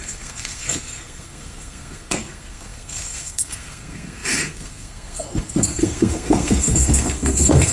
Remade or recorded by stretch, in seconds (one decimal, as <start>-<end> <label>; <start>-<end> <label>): 0.0-7.7 remade